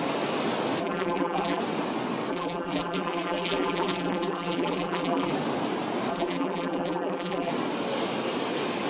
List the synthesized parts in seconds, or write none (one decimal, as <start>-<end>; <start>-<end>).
0.8-1.6; 2.3-5.3; 6.1-7.5